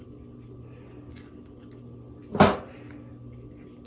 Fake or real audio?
real